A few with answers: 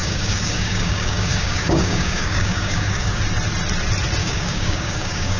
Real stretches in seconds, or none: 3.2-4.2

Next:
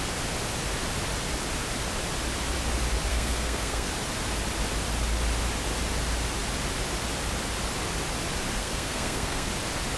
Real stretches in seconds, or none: 0.0-3.1; 3.9-8.6; 9.5-10.0

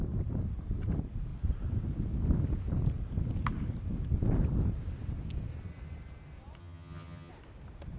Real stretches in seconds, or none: 0.0-6.6; 7.3-8.0

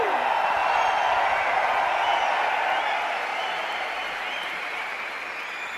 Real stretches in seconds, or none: 0.0-2.1; 2.8-3.3; 5.1-5.8

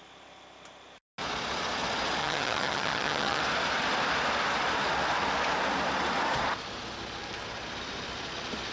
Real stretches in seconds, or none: 0.0-2.2; 3.4-8.7

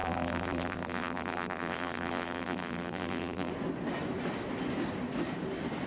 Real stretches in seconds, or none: 3.5-5.9

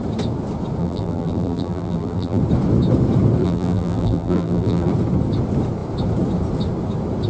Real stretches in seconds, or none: 0.0-0.8; 2.4-3.4; 4.9-7.3